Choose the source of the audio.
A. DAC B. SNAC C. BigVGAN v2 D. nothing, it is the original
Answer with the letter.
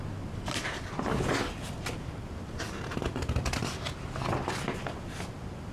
D